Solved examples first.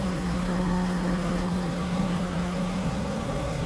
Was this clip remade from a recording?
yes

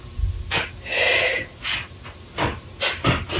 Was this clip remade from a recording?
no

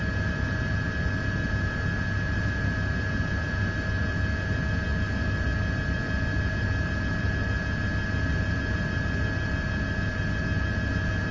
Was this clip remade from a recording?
no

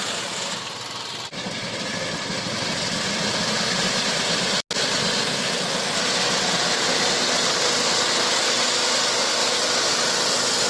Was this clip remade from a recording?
no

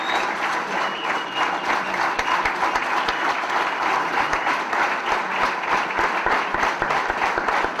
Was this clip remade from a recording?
no